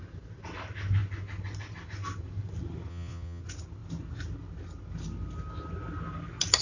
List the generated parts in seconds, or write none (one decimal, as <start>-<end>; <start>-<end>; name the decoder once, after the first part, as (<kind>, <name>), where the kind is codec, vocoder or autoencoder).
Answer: 2.9-3.4 (vocoder, Vocos)